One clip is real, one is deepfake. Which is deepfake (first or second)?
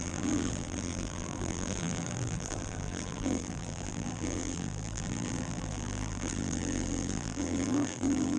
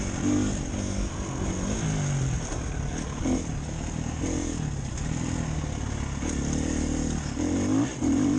first